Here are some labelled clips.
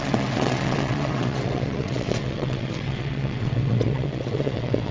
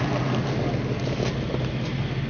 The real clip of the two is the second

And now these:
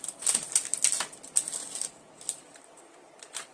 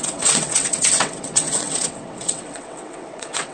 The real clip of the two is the first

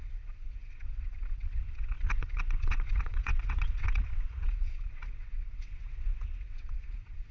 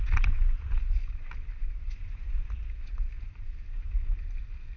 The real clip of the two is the second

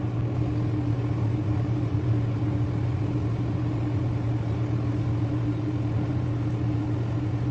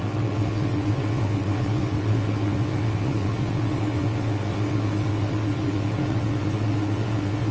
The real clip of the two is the first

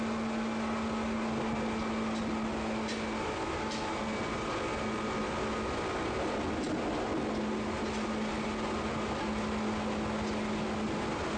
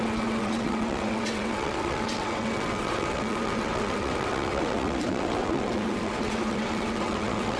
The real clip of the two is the first